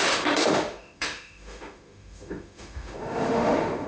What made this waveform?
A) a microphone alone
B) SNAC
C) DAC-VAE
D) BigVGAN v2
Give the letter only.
C